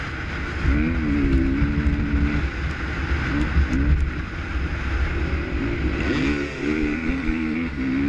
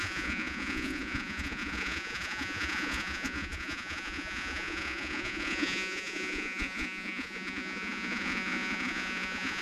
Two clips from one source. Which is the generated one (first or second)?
second